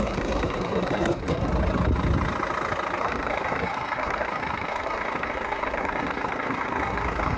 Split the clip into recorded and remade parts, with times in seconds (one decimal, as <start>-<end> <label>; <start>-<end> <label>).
0.0-1.5 remade; 1.5-3.0 recorded; 3.0-7.4 remade